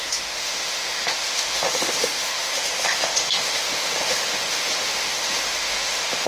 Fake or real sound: fake